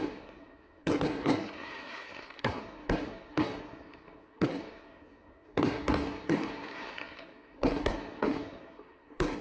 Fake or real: fake